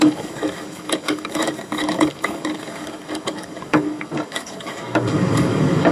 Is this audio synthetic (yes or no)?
yes